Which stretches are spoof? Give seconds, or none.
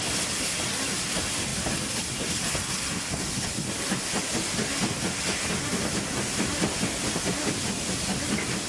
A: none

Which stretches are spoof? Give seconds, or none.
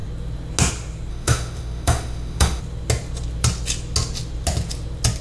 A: 1.1-2.6 (autoencoder, DAC-VAE)